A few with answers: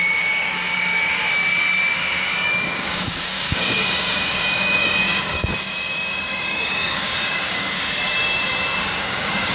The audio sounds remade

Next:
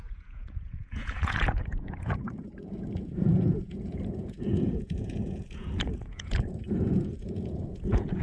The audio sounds remade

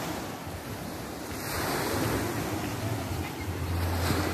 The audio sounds recorded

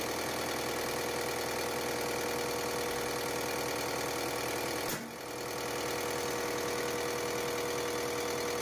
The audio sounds recorded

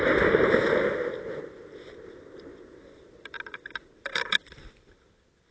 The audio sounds recorded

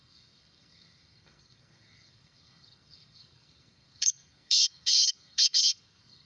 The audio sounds remade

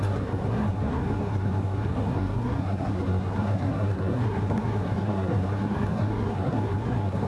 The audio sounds remade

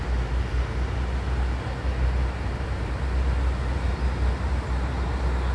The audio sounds recorded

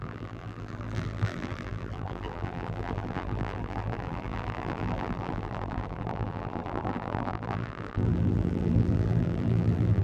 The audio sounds remade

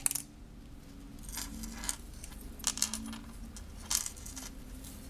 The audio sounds recorded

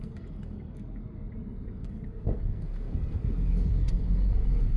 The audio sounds remade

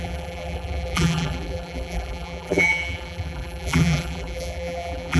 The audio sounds remade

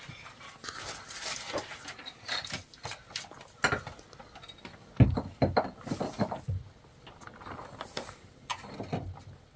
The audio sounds recorded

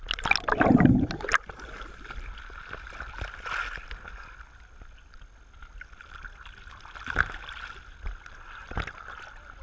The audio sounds recorded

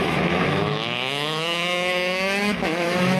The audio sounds remade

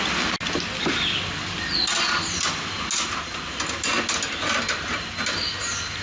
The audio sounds recorded